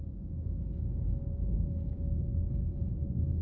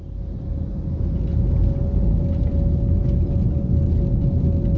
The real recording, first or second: second